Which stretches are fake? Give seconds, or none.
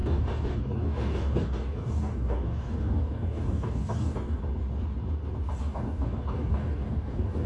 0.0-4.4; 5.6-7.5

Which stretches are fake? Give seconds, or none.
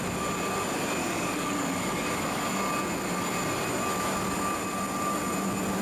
1.0-2.4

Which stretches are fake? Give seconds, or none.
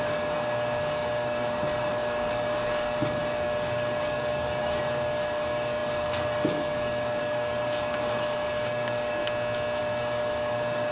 0.0-9.2; 9.8-10.9